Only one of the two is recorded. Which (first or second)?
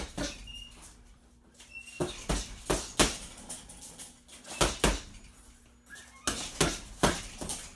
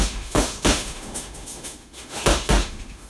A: first